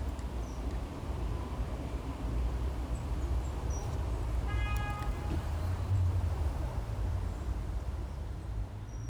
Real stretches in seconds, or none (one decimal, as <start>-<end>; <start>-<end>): none

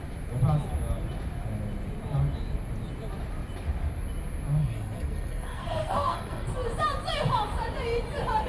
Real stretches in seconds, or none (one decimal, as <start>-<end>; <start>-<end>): 0.0-4.6; 6.5-8.5

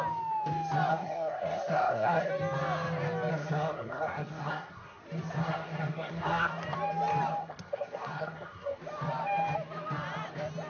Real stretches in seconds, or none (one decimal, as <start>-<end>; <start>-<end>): 0.0-0.9; 2.3-3.3; 5.0-5.4; 6.5-7.4; 8.8-10.7

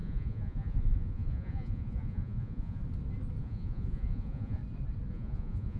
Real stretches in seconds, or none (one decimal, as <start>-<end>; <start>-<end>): 2.8-3.4; 4.6-5.1

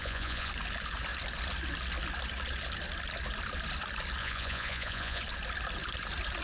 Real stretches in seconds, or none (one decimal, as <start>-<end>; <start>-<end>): 0.5-4.2; 5.2-6.4

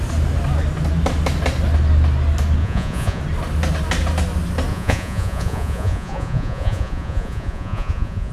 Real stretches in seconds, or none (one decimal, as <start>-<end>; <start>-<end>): 0.0-2.6; 3.2-4.7

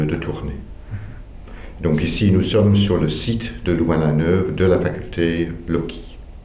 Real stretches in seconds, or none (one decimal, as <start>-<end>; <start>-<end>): 0.0-0.6; 1.3-6.4

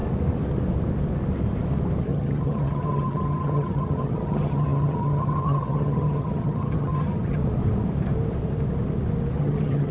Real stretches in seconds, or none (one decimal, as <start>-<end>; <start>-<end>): 0.0-2.0; 7.4-9.4